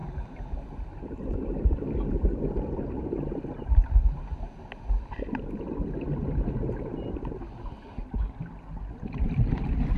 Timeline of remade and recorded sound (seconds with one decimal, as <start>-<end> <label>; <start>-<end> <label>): 0.0-10.0 recorded